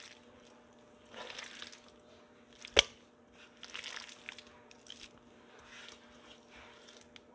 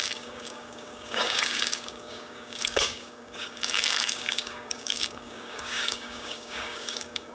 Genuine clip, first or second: first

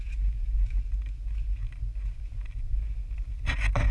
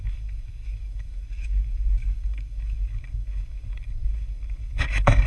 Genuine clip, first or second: first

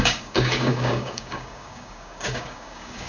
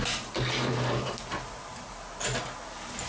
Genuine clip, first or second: second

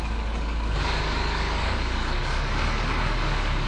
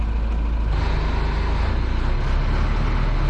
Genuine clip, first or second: second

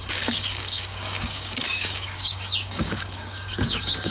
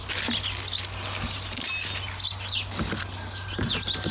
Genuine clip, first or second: second